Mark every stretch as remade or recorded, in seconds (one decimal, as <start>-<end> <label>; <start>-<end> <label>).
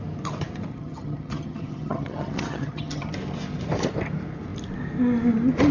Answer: 0.0-0.7 recorded; 0.7-3.1 remade; 3.1-5.7 recorded